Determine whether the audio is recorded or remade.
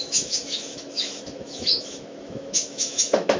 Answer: remade